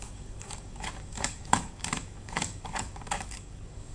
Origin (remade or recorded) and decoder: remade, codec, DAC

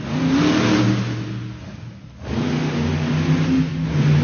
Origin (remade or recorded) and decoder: recorded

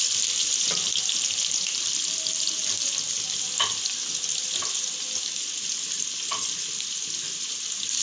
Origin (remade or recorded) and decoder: recorded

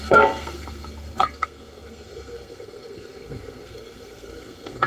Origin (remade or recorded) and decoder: remade, codec, SNAC